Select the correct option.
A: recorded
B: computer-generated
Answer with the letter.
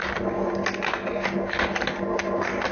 A